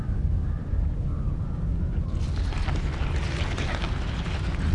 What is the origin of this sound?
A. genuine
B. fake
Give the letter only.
A